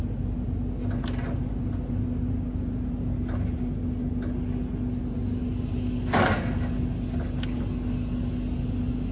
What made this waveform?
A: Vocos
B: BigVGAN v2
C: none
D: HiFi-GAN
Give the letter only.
C